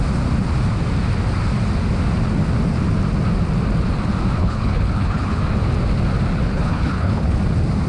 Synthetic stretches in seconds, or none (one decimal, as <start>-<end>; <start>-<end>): 4.4-5.4; 6.5-7.4